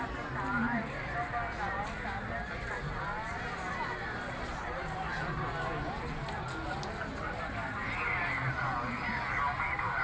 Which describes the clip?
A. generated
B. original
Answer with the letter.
B